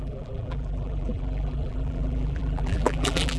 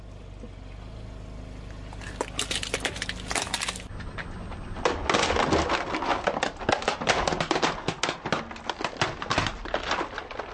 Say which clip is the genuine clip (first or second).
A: second